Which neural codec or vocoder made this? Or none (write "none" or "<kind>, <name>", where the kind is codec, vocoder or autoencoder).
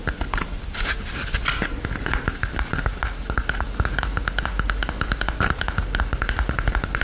none